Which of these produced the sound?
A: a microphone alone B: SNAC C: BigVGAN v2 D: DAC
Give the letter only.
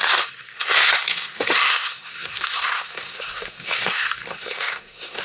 B